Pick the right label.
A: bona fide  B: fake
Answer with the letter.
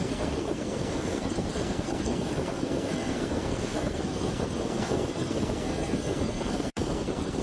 B